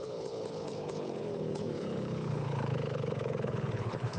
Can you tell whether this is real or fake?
fake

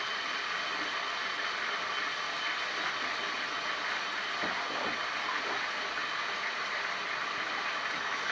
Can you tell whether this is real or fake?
real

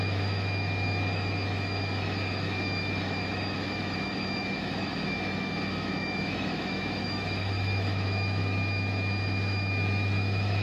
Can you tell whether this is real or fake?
fake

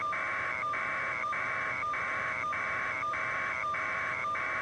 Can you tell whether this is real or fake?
fake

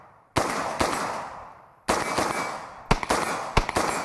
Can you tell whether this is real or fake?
real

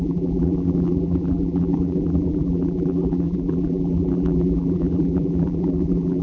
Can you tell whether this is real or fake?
fake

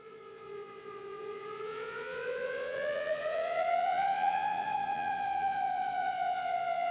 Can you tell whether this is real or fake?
fake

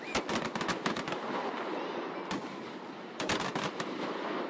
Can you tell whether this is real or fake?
real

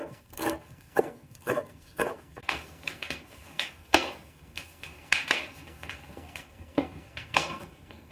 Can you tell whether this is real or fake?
fake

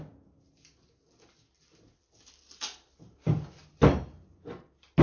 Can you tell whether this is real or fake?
real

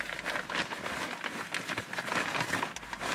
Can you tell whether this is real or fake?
real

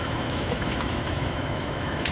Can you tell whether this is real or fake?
fake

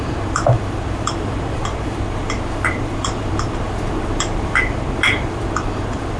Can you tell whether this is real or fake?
fake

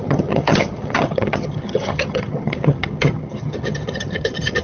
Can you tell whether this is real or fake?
fake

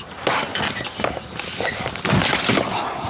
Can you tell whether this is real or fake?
real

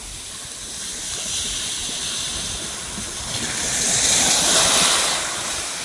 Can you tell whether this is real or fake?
real